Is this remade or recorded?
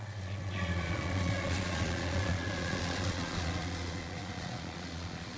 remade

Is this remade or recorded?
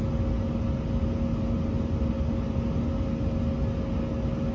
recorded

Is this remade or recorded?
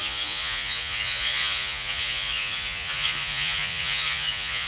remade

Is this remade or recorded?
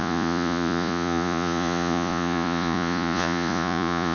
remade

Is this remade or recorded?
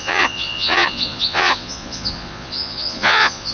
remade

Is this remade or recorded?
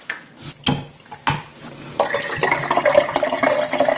recorded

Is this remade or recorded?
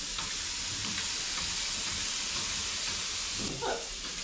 recorded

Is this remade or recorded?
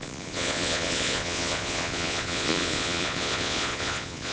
remade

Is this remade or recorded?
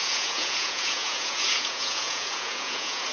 remade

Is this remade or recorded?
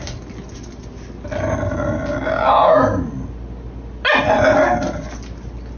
recorded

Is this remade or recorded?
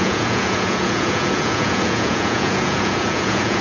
remade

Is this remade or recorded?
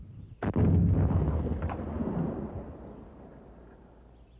recorded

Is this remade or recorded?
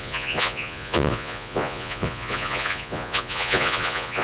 remade